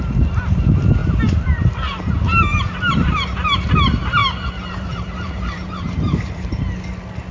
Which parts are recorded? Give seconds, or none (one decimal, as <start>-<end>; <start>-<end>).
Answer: 0.0-1.0; 3.7-4.2; 6.6-7.3